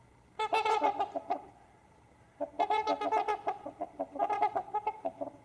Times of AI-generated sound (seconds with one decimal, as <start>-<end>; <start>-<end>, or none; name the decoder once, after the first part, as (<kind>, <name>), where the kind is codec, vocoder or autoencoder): none